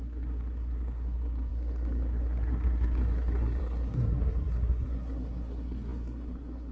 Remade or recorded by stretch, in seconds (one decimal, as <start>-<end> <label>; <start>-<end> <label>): 0.0-6.7 remade